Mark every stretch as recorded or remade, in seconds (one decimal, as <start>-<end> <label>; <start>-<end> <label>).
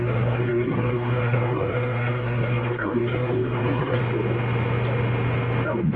0.0-4.0 remade; 4.0-6.0 recorded